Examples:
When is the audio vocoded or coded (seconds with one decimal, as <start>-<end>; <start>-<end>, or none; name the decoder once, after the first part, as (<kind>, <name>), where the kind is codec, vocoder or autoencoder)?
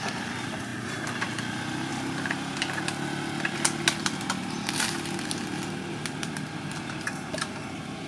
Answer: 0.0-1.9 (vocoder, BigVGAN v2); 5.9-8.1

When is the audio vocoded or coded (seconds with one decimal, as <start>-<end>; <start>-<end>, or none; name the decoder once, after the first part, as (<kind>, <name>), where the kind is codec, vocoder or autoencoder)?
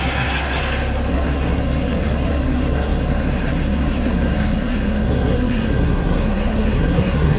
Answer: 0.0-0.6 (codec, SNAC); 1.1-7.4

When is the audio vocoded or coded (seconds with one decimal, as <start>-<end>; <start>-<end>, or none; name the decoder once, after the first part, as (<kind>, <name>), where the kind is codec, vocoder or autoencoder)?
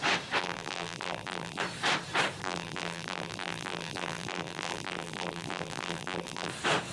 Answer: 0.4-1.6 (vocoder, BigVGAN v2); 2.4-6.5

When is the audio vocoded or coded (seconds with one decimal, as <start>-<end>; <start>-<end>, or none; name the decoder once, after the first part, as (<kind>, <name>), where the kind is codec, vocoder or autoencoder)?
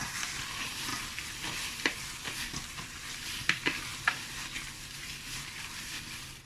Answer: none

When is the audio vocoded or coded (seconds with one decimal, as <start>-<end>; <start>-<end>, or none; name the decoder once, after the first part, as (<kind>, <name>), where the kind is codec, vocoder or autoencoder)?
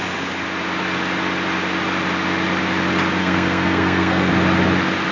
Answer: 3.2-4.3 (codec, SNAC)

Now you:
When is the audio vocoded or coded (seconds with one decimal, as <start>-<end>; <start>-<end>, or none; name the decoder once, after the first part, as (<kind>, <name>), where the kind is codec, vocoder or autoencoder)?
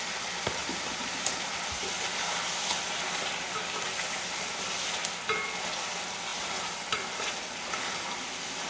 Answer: 0.6-2.5 (vocoder, BigVGAN v2); 6.3-7.3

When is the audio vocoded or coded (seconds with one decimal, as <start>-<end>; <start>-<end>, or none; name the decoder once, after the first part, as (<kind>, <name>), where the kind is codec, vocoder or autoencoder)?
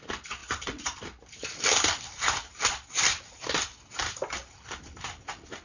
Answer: none